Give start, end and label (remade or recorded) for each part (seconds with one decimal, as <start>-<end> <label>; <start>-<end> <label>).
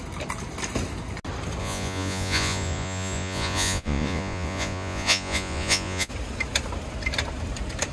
0.0-1.6 recorded; 1.6-6.1 remade; 6.1-7.9 recorded